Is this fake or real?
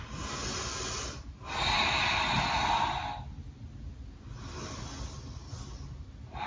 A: real